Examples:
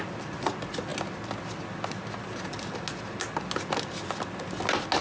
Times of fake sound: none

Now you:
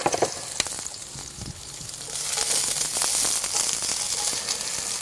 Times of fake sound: 1.2-1.9

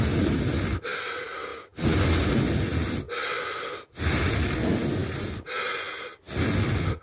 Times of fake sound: none

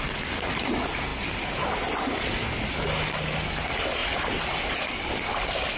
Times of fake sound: none